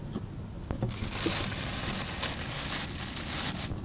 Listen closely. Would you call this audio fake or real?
real